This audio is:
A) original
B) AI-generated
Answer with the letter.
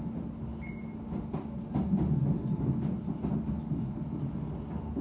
A